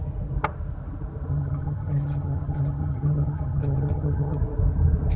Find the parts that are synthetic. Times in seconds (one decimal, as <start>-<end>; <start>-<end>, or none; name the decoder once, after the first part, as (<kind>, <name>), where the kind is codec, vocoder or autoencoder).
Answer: 1.3-4.4 (vocoder, HiFi-GAN)